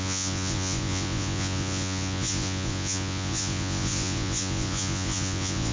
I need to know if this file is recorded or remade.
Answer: remade